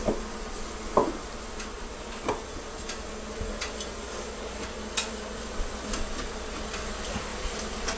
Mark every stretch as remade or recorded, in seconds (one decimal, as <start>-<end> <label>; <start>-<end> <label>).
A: 0.0-8.0 recorded